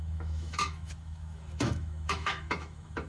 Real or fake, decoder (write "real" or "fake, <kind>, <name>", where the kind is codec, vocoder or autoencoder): fake, autoencoder, DAC-VAE